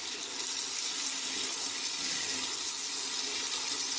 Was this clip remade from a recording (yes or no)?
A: no